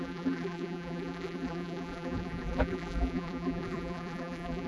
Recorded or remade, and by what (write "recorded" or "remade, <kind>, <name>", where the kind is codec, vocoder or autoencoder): remade, vocoder, BigVGAN v2